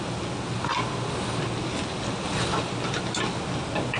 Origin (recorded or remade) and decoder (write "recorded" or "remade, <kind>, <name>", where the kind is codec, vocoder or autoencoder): recorded